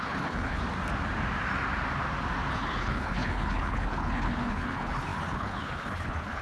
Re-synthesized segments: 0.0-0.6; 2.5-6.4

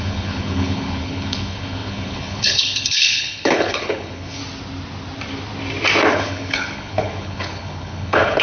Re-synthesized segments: 0.0-4.4; 6.1-8.4

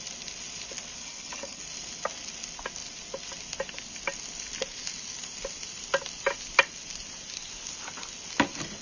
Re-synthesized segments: 1.0-1.6

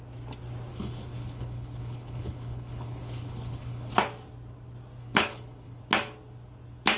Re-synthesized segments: 0.7-3.9; 5.0-5.8

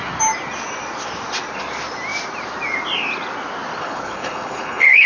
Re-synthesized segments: 3.8-5.1

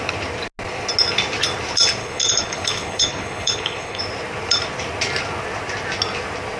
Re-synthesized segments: 2.0-4.0